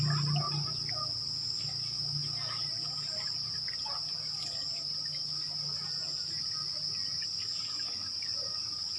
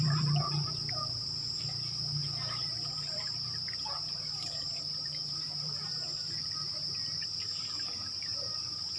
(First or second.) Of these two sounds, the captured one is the first